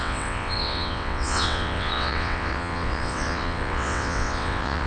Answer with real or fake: fake